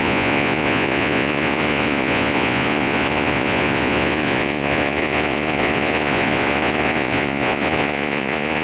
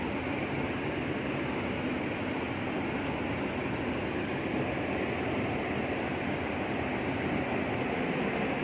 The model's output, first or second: first